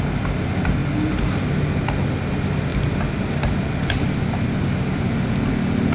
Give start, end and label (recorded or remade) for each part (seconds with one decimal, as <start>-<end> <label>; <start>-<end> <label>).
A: 0.0-5.9 recorded